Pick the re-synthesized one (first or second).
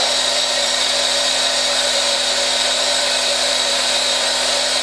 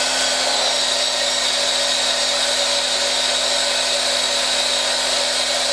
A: first